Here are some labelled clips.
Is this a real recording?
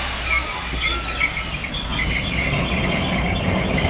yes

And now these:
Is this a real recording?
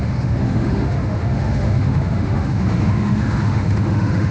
no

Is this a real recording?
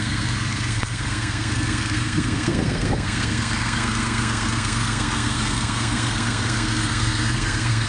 no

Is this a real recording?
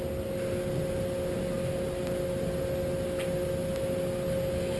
yes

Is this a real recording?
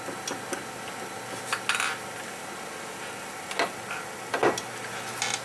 yes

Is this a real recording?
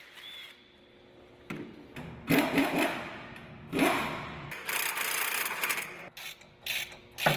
yes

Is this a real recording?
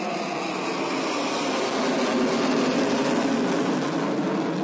yes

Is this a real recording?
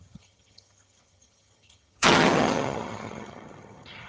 no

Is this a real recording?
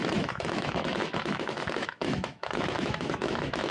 no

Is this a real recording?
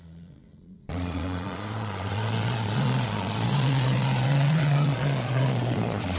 no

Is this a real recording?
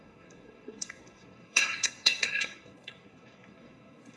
no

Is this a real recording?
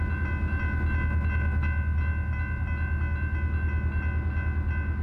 yes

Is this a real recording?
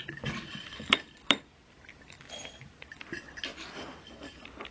yes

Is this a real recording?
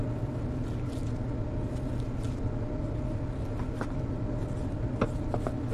yes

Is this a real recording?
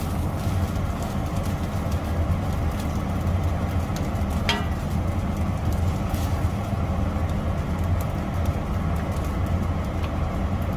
yes